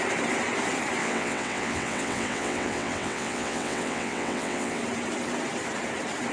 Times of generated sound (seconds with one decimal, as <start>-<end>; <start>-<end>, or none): 1.0-4.8